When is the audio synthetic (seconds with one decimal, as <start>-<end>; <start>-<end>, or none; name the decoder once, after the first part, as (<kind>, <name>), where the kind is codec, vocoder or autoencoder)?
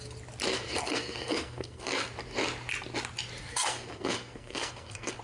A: 0.5-2.1 (codec, SNAC); 3.4-5.2